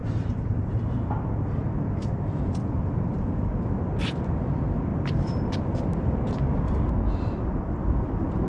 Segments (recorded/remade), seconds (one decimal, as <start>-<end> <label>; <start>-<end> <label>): 0.0-1.1 remade; 1.1-1.6 recorded; 1.6-3.5 remade; 3.5-4.9 recorded; 4.9-5.7 remade; 5.7-8.5 recorded